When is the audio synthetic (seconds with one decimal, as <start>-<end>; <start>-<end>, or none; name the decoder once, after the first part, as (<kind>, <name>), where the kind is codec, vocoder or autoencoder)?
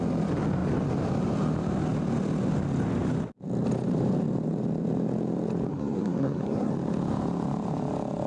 5.7-6.7 (codec, SNAC)